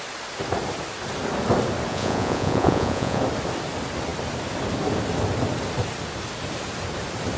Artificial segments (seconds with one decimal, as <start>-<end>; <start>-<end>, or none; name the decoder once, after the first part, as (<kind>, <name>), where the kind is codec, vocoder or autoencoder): 1.9-3.2 (vocoder, Vocos)